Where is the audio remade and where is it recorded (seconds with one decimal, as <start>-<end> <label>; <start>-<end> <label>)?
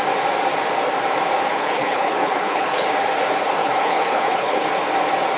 0.0-1.5 recorded; 1.5-2.9 remade; 2.9-3.6 recorded; 3.6-4.6 remade; 4.6-5.4 recorded